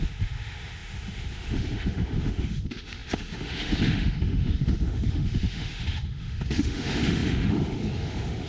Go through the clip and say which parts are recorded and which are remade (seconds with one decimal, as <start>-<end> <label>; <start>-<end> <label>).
0.0-8.5 remade